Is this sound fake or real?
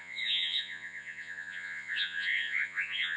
fake